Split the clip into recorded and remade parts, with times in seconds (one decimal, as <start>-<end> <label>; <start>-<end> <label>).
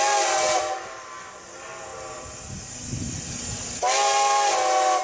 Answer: 0.0-5.0 recorded